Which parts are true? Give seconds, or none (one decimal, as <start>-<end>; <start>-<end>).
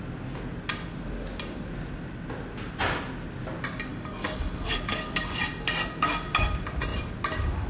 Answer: 0.0-3.9; 5.4-7.7